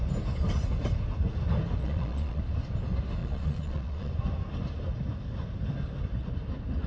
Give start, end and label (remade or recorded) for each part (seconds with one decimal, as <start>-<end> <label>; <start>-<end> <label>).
0.0-1.8 recorded; 1.8-2.4 remade; 2.4-3.2 recorded; 3.2-4.1 remade; 4.1-6.9 recorded